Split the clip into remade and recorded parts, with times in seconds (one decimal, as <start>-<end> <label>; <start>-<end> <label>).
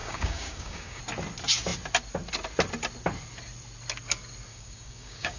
0.0-1.0 remade; 1.0-4.5 recorded; 4.5-5.4 remade